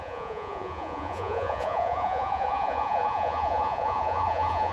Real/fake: fake